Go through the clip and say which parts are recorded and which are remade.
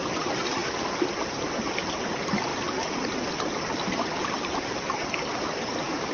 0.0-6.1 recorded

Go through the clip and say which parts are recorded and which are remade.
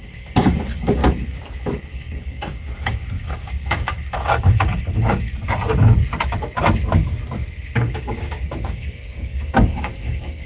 0.0-1.0 remade; 1.0-1.9 recorded; 1.9-5.3 remade; 5.3-7.6 recorded; 7.6-10.5 remade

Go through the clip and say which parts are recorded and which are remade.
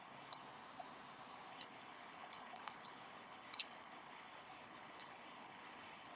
0.0-0.4 remade; 0.4-1.5 recorded; 1.5-6.2 remade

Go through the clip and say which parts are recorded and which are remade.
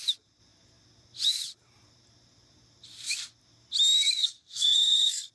0.0-4.2 recorded; 4.2-5.3 remade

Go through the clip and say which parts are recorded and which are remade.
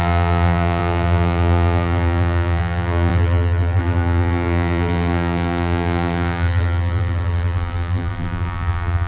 0.0-9.1 remade